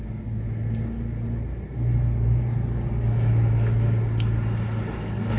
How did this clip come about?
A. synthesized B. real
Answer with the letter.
B